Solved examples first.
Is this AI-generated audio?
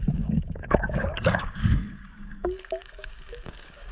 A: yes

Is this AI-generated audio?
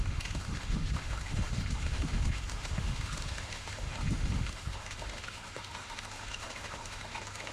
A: yes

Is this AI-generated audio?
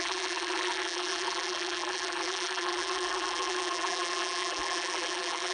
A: yes